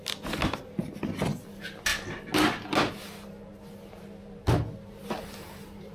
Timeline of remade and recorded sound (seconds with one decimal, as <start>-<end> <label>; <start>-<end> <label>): 0.0-5.9 recorded